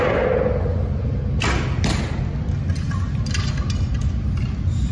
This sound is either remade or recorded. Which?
recorded